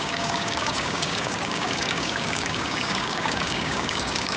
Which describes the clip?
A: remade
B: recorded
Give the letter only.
A